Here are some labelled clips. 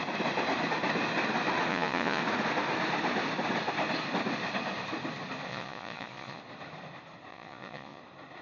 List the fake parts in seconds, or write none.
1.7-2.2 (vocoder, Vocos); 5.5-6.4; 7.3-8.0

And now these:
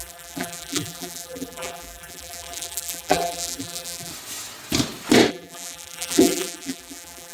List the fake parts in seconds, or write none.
0.0-4.1 (vocoder, BigVGAN v2); 5.3-7.3

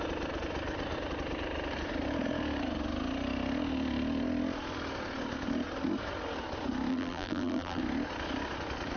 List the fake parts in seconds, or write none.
6.9-7.8 (vocoder, BigVGAN v2)

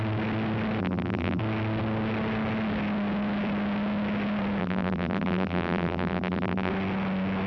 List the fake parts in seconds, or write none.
0.8-1.4 (vocoder, BigVGAN v2); 4.6-6.7

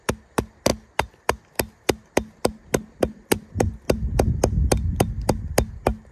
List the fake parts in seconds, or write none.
none

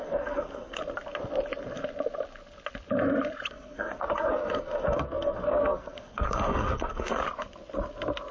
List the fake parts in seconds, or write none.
0.0-0.8 (codec, SNAC); 3.5-7.2